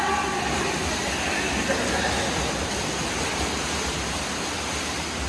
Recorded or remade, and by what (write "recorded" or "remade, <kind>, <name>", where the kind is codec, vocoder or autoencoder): recorded